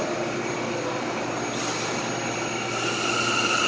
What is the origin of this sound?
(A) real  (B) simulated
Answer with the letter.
A